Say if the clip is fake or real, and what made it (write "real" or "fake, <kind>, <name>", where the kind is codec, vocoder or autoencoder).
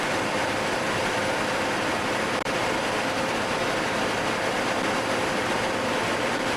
fake, vocoder, BigVGAN v2